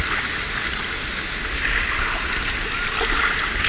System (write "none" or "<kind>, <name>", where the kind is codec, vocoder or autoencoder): none